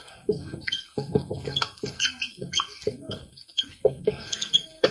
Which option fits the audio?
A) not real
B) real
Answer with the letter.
A